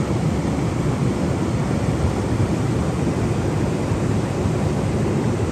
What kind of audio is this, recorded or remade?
recorded